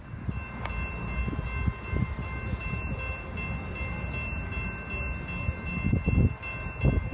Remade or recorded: recorded